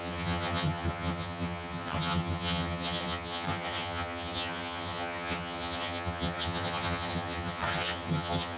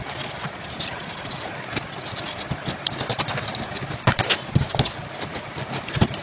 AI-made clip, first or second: first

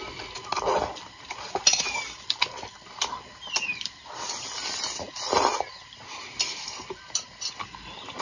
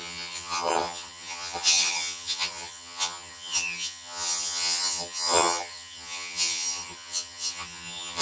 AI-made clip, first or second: second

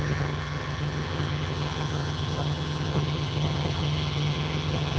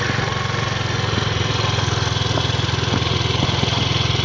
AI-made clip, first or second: first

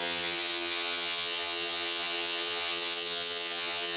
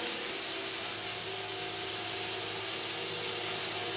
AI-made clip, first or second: first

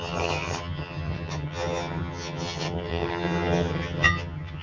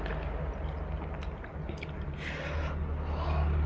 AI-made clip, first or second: first